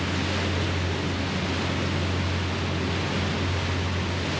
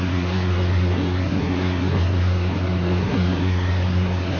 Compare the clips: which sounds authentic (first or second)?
first